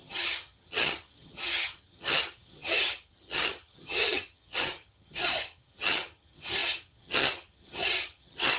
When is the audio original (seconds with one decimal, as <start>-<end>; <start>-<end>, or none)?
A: none